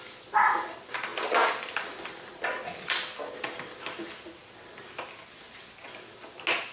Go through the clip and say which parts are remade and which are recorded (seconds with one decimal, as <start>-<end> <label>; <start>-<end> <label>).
0.0-6.7 recorded